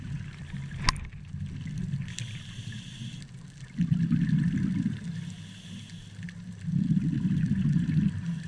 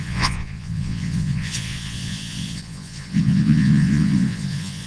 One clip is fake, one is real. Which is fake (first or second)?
second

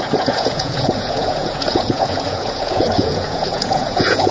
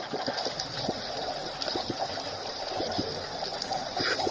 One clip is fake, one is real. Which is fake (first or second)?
first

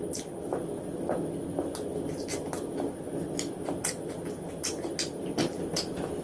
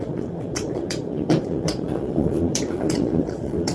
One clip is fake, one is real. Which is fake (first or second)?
second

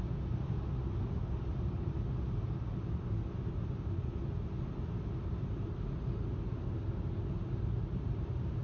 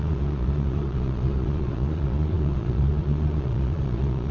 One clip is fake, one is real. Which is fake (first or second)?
second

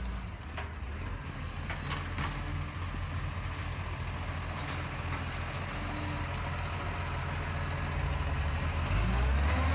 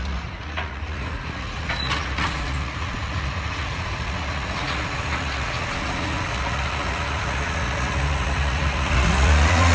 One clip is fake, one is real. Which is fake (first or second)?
second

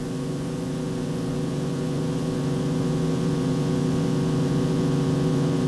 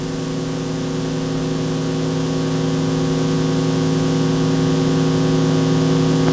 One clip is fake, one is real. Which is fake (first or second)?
first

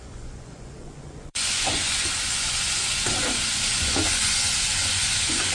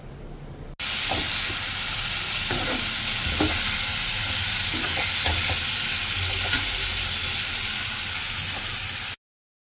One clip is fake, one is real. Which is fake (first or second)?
first